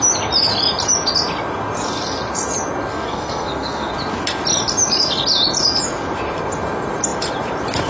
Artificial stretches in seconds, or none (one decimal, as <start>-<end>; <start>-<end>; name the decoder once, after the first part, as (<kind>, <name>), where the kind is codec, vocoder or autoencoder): 2.9-3.9 (codec, SNAC)